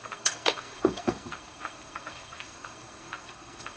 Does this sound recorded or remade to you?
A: remade